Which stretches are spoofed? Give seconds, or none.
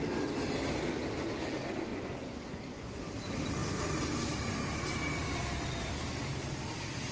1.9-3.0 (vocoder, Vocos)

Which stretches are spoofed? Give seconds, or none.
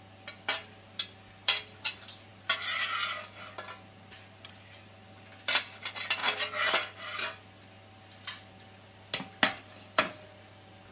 none